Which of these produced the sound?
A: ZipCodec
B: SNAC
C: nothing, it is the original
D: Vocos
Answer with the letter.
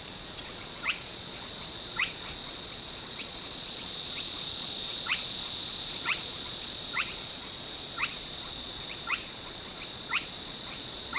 D